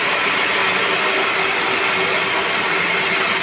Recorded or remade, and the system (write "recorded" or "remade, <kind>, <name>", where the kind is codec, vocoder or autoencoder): recorded